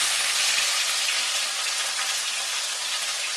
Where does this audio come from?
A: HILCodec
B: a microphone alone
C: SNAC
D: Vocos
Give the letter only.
B